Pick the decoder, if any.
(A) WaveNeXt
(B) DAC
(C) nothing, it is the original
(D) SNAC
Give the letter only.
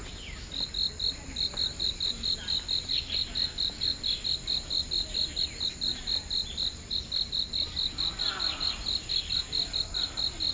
C